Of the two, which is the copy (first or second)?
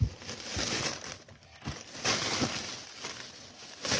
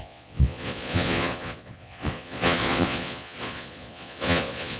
second